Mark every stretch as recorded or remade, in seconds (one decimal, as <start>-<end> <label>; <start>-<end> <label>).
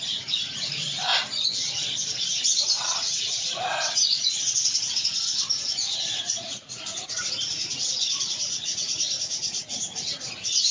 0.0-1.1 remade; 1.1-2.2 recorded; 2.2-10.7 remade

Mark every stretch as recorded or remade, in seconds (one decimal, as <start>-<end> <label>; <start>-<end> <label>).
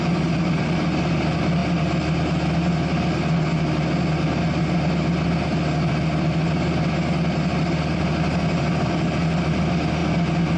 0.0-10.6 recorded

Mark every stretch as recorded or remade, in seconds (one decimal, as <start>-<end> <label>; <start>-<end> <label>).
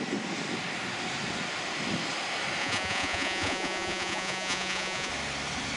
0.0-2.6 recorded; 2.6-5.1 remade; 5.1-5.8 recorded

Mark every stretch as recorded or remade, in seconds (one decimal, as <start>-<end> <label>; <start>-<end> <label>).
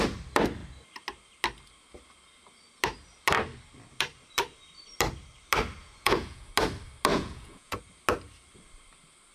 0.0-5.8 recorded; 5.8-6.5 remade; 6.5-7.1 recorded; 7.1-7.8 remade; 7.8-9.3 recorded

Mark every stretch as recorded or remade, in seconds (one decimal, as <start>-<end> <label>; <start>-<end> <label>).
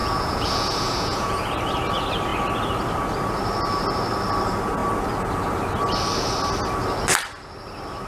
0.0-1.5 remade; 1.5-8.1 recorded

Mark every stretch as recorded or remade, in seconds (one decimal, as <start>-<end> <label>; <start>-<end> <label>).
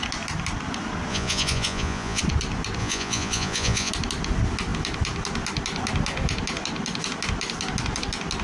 0.0-1.1 recorded; 1.1-2.2 remade; 2.2-2.8 recorded; 2.8-3.9 remade; 3.9-8.4 recorded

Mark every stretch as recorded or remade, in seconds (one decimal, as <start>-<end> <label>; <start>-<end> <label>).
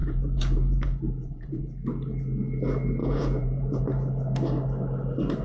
0.0-1.6 remade; 1.6-3.0 recorded; 3.0-3.8 remade; 3.8-5.4 recorded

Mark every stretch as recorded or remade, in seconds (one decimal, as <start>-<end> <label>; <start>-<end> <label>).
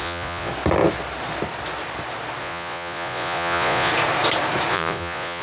0.0-0.5 remade; 0.5-2.4 recorded; 2.4-3.9 remade; 3.9-4.7 recorded; 4.7-5.4 remade